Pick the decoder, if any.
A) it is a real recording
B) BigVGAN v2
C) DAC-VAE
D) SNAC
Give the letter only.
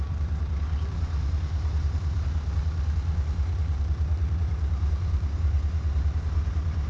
B